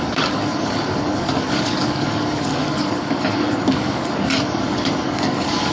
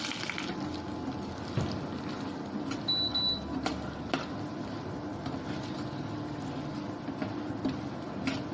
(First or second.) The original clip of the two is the second